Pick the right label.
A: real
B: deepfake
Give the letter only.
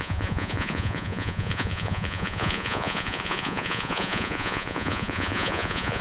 B